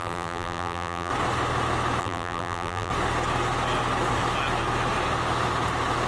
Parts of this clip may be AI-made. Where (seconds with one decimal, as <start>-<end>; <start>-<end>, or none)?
0.0-1.1; 2.0-2.9